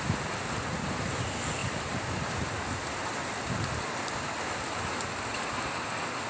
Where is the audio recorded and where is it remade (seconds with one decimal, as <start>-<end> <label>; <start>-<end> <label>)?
0.0-6.3 recorded